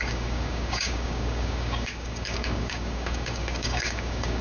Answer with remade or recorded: remade